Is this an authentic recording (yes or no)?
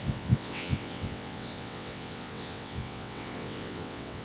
no